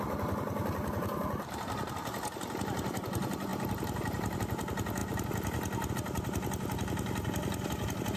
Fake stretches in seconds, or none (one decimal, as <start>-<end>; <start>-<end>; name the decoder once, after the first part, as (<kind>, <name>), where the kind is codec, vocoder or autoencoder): none